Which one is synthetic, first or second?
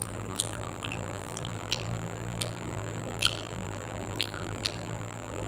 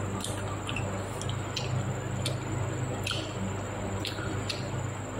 first